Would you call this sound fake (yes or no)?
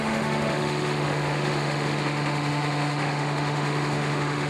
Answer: yes